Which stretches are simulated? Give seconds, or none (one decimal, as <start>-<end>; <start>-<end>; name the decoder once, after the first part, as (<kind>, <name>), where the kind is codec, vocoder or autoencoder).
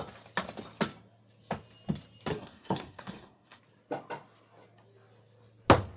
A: 2.3-3.6 (codec, SNAC)